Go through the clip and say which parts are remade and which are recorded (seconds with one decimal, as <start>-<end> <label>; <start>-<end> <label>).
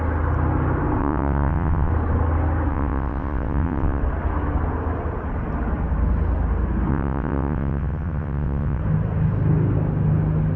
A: 0.0-1.0 recorded; 1.0-1.9 remade; 1.9-2.7 recorded; 2.7-4.0 remade; 4.0-6.9 recorded; 6.9-8.8 remade; 8.8-10.6 recorded